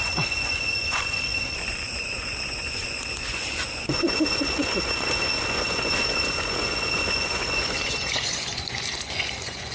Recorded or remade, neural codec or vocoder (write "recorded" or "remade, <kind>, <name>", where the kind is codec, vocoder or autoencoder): remade, vocoder, Vocos